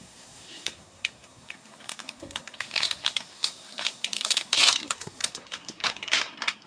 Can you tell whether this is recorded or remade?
remade